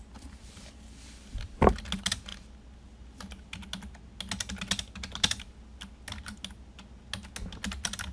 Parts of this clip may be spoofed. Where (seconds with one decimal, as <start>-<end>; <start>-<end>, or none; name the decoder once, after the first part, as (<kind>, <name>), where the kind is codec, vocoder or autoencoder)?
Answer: none